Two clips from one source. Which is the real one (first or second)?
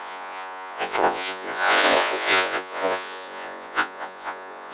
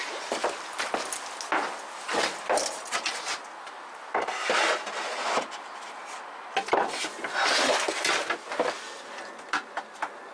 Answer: second